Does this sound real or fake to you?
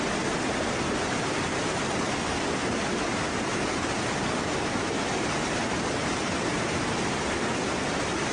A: real